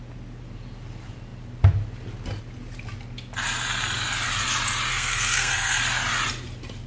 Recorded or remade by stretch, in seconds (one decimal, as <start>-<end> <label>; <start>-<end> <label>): 0.0-4.9 recorded; 4.9-5.8 remade; 5.8-6.9 recorded